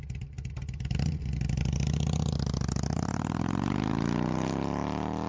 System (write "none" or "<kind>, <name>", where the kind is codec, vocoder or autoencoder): none